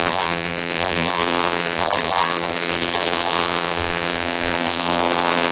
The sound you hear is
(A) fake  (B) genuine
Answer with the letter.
A